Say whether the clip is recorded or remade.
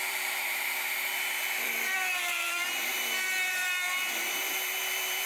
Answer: remade